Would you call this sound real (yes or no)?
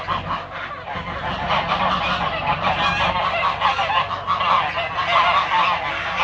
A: yes